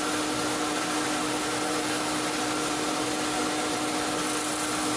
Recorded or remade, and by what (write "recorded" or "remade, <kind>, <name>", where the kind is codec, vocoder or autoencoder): recorded